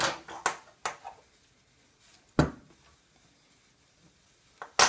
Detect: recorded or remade recorded